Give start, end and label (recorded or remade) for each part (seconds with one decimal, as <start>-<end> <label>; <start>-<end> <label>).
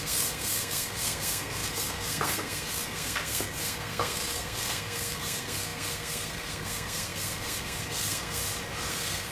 0.0-8.4 remade; 8.4-8.9 recorded; 8.9-9.3 remade